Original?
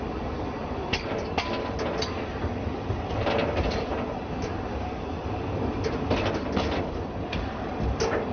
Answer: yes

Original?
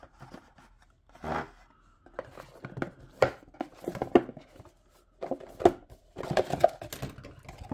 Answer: yes